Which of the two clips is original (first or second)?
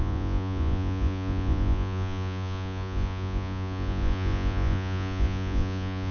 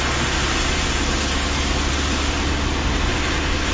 second